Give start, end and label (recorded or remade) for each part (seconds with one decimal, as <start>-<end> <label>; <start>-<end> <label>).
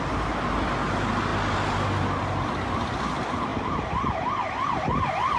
0.0-5.4 recorded